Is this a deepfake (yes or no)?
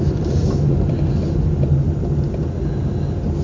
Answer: no